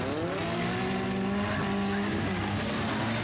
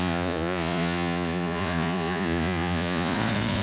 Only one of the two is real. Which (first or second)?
first